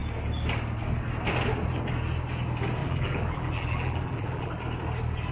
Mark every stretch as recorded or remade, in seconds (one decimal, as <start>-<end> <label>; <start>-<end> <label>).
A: 0.0-2.8 recorded; 2.8-4.5 remade; 4.5-5.3 recorded